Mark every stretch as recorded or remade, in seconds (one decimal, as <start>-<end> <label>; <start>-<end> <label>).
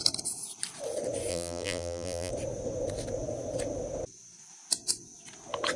0.0-1.3 recorded; 1.3-2.3 remade; 2.3-5.8 recorded